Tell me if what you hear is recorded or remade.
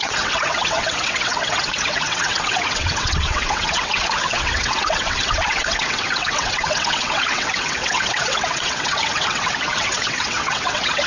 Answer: remade